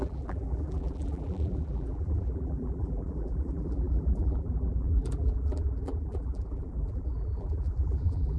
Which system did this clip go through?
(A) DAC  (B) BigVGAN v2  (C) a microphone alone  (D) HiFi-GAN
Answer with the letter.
B